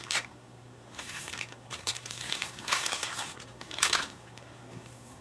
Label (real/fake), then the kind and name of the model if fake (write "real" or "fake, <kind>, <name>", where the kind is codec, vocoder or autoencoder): fake, codec, SNAC